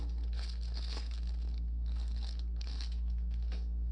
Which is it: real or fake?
fake